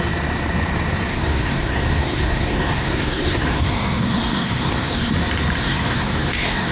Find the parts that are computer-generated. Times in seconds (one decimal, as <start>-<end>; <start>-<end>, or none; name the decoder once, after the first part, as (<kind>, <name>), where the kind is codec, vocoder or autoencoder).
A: 1.1-5.1 (codec, SNAC); 5.6-6.7